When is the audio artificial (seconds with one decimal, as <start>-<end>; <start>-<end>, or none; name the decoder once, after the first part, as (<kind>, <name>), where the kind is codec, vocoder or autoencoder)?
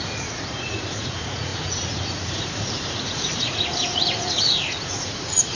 0.0-5.5 (vocoder, Vocos)